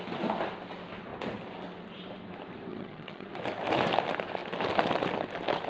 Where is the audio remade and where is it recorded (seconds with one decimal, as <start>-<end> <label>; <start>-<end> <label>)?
0.0-2.7 recorded; 2.7-3.3 remade; 3.3-5.7 recorded